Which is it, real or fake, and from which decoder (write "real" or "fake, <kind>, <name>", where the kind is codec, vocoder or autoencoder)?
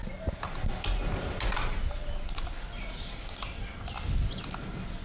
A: real